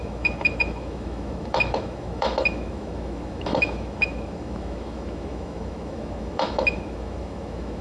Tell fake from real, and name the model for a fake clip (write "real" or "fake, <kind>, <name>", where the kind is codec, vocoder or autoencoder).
fake, autoencoder, DAC-VAE